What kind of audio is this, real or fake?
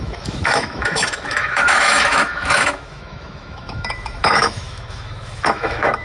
fake